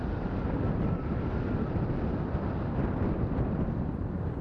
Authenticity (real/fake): real